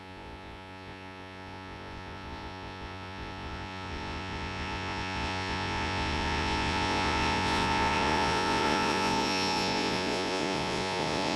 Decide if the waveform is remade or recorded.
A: remade